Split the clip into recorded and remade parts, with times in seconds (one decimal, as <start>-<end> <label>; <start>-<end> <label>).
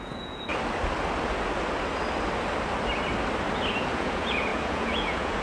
0.0-0.5 remade; 0.5-3.7 recorded; 3.7-5.4 remade